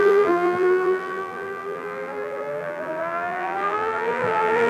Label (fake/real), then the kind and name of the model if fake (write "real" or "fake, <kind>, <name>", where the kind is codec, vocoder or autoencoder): fake, vocoder, BigVGAN v2